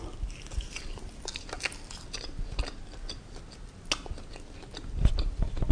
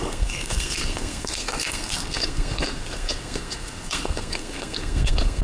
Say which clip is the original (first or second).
first